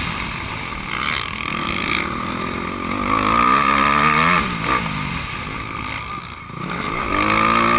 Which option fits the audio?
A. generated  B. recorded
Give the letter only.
B